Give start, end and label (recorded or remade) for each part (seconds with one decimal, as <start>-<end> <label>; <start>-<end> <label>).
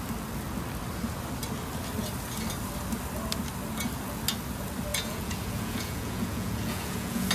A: 0.0-4.9 recorded; 4.9-7.3 remade